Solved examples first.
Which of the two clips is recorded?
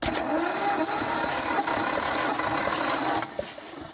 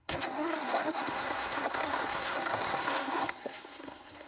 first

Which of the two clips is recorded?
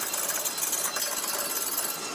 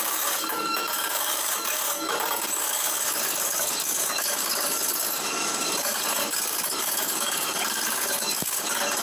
first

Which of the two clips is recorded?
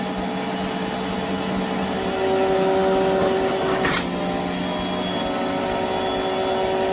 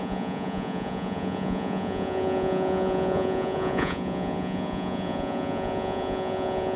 first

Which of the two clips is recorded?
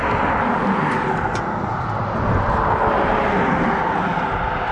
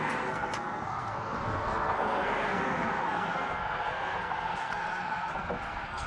first